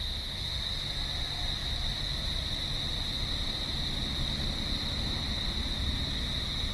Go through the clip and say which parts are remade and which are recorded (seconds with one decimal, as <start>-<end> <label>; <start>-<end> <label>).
0.0-6.7 recorded